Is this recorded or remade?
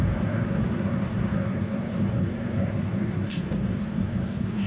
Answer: remade